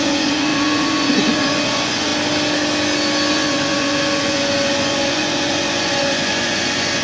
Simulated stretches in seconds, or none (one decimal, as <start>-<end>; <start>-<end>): 0.0-2.1; 3.3-7.0